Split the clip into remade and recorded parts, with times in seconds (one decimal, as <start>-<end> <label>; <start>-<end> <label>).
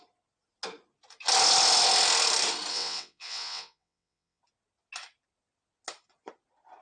0.0-2.7 recorded; 2.7-4.4 remade; 4.4-6.8 recorded